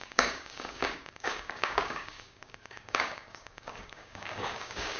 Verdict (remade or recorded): remade